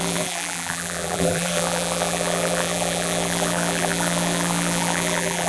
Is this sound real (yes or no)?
no